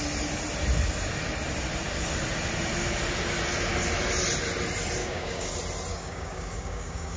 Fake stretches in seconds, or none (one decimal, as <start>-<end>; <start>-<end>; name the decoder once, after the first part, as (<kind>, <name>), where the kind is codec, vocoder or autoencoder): 5.0-5.5 (codec, DAC); 5.9-7.2